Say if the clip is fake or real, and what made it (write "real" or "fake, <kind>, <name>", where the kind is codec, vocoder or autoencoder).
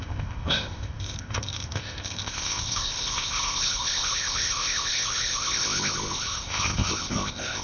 fake, codec, ZipCodec